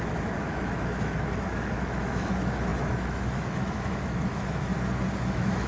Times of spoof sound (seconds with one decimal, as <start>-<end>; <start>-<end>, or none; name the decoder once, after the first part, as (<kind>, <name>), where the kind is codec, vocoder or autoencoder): 0.0-4.7 (autoencoder, DAC-VAE); 5.3-5.7